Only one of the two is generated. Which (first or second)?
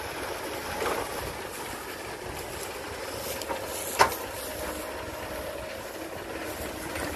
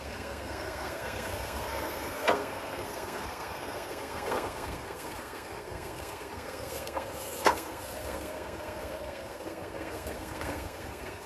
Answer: second